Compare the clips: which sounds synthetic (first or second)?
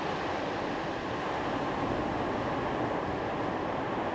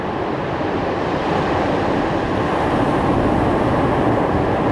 second